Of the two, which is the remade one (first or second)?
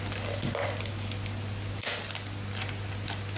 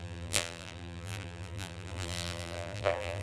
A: second